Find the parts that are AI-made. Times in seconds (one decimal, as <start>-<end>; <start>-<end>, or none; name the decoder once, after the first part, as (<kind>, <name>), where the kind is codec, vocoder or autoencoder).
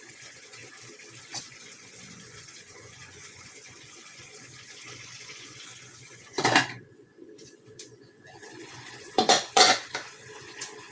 0.0-0.6 (vocoder, Vocos); 1.4-10.9